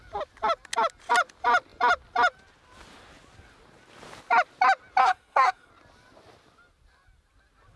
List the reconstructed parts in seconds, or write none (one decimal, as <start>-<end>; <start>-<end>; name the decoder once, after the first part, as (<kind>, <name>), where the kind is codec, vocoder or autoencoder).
5.0-5.7 (codec, SNAC)